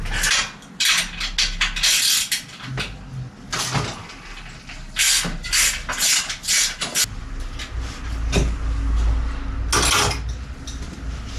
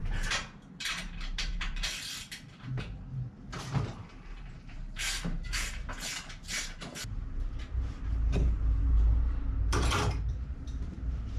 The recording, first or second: first